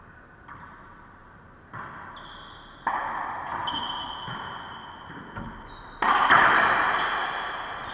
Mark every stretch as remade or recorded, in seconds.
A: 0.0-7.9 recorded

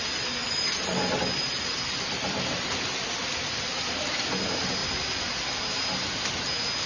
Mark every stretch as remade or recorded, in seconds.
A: 0.0-0.4 recorded; 0.4-3.1 remade; 3.1-6.9 recorded

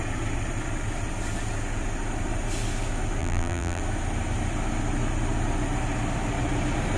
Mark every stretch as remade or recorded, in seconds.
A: 0.0-3.2 recorded; 3.2-3.8 remade; 3.8-7.0 recorded

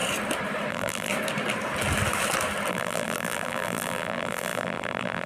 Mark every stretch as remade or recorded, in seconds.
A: 0.0-0.7 recorded; 0.7-1.1 remade; 1.1-2.7 recorded; 2.7-5.3 remade